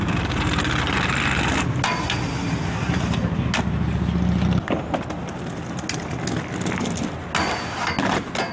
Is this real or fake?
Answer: real